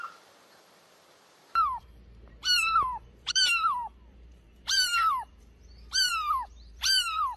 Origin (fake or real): fake